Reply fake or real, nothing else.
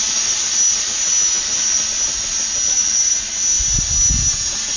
real